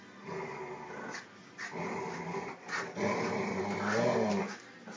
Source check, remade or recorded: recorded